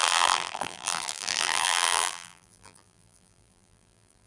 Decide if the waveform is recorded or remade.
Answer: remade